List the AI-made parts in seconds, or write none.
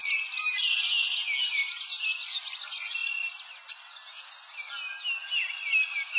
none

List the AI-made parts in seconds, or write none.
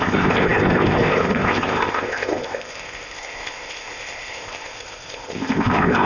0.0-6.1 (codec, ZipCodec)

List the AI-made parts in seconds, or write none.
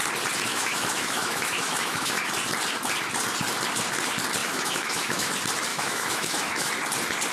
0.5-2.3 (autoencoder, DAC-VAE); 4.4-5.3; 5.7-6.7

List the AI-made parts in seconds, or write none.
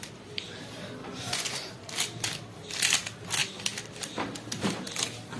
1.0-1.7 (vocoder, Vocos)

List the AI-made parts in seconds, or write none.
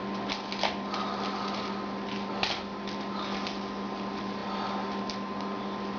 none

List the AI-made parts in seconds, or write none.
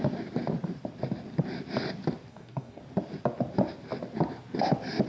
2.3-2.8 (codec, DAC)